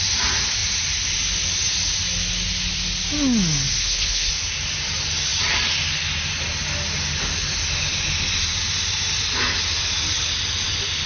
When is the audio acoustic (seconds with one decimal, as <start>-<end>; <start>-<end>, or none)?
0.0-3.8; 4.3-11.1